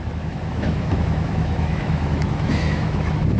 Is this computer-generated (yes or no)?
yes